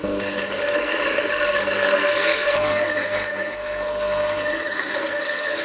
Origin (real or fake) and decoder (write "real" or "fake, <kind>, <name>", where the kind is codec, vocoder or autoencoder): fake, codec, SNAC